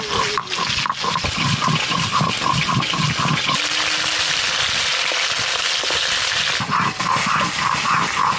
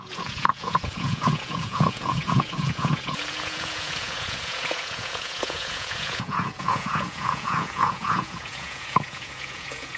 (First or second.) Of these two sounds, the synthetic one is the second